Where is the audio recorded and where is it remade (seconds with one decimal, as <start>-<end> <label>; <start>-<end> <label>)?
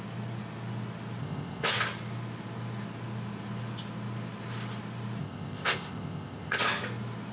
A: 0.0-1.2 recorded; 1.2-1.7 remade; 1.7-5.2 recorded; 5.2-6.6 remade; 6.6-7.3 recorded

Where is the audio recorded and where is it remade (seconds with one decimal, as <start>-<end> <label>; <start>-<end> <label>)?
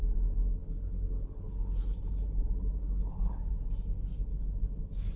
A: 0.0-0.6 recorded; 0.6-3.7 remade; 3.7-4.3 recorded; 4.3-4.8 remade; 4.8-5.2 recorded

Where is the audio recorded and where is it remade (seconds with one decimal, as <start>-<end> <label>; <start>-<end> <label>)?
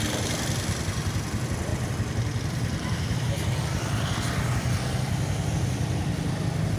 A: 0.0-6.8 recorded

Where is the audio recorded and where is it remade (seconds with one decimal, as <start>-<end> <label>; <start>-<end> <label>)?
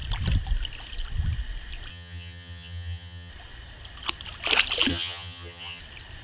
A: 0.0-1.9 recorded; 1.9-3.3 remade; 3.3-4.9 recorded; 4.9-5.8 remade; 5.8-6.2 recorded